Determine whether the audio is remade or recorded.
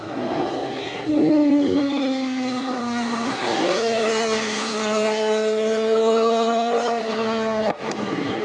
remade